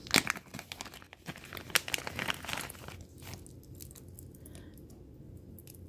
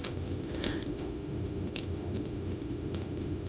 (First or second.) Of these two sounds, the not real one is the second